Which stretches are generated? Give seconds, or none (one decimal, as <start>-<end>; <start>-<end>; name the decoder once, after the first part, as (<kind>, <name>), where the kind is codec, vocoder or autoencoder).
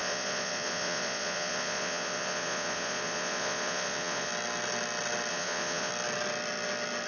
0.0-4.3 (vocoder, Vocos); 5.3-5.9